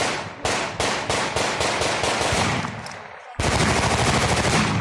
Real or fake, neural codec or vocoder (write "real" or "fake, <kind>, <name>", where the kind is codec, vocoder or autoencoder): real